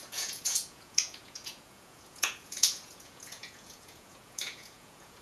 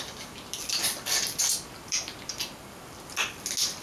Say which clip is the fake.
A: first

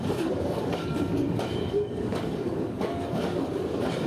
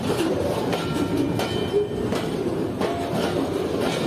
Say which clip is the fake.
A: first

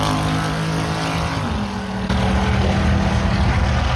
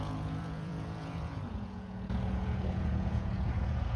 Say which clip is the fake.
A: second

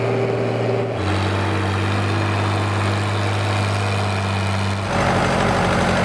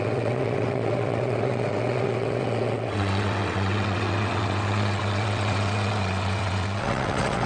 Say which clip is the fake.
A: second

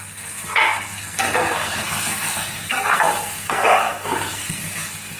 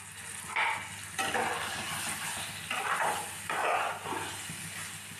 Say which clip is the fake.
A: first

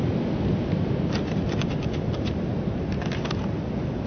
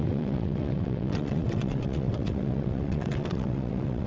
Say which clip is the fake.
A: second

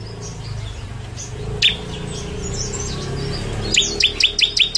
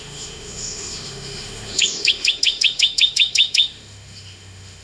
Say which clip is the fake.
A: second